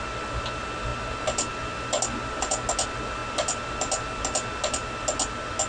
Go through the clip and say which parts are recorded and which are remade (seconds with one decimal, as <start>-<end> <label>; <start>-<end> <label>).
0.0-5.7 recorded